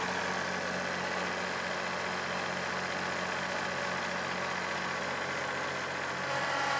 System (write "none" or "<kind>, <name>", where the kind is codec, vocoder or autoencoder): none